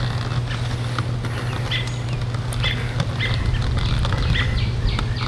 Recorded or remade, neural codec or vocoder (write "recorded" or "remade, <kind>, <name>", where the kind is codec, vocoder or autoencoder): recorded